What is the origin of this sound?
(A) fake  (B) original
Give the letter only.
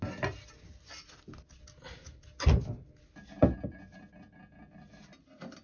B